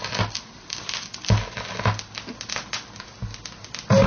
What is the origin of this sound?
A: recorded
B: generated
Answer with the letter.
A